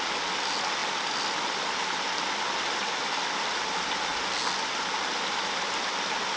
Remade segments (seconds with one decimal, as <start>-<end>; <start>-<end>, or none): none